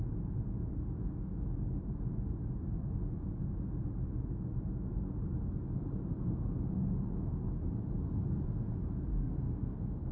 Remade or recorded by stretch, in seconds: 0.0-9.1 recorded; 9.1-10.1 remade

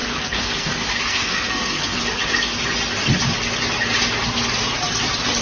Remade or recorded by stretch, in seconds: 0.0-2.0 remade; 2.0-5.4 recorded

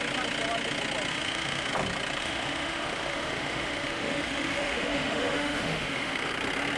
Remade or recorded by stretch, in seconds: 0.0-1.1 recorded; 1.1-1.7 remade; 1.7-2.2 recorded; 2.2-6.3 remade; 6.3-6.8 recorded

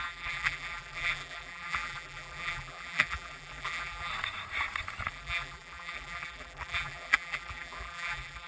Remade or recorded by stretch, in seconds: 0.0-4.1 remade; 4.1-5.1 recorded; 5.1-8.5 remade

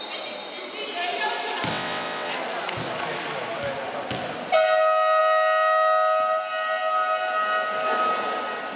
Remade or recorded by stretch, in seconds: 0.0-1.7 recorded; 1.7-2.3 remade; 2.3-8.8 recorded

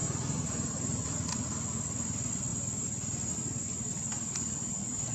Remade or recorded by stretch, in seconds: 0.0-1.0 remade; 1.0-5.1 recorded

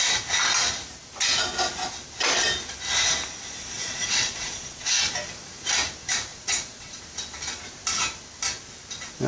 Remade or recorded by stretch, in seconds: 0.0-3.8 recorded; 3.8-5.0 remade; 5.0-6.3 recorded; 6.3-7.0 remade; 7.0-9.3 recorded

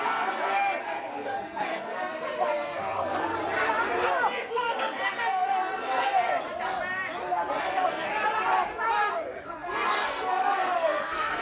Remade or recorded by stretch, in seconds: 0.0-3.3 remade; 3.3-4.5 recorded; 4.5-6.3 remade; 6.3-7.6 recorded; 7.6-8.1 remade; 8.1-9.0 recorded; 9.0-11.4 remade